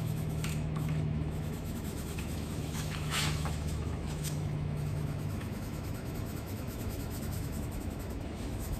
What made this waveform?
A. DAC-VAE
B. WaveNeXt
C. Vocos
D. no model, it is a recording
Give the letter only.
A